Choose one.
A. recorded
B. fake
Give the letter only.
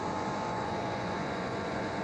B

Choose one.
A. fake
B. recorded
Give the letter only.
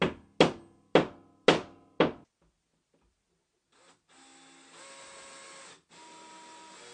B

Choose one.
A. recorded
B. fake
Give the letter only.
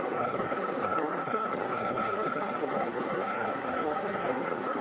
B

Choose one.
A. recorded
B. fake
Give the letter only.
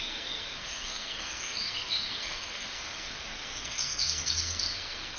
B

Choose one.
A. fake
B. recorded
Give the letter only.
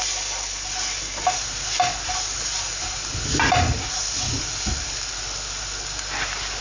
B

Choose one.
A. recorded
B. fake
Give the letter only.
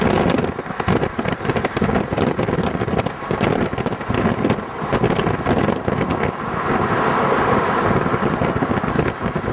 A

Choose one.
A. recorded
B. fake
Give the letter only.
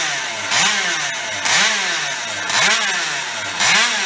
A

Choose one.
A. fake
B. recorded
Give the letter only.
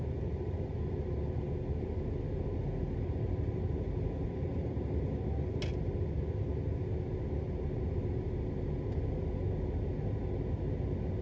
B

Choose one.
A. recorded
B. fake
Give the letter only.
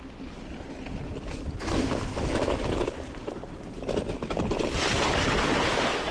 A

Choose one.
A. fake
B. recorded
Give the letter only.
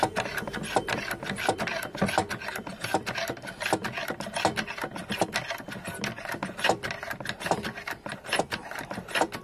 B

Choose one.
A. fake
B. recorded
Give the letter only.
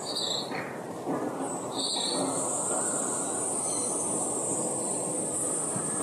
B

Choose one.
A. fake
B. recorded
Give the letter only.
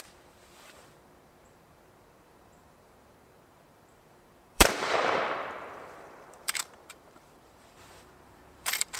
A